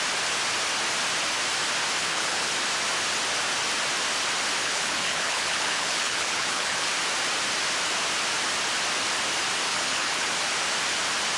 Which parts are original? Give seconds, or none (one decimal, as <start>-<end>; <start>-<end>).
0.0-2.0; 2.5-4.6; 6.9-9.7; 10.3-11.4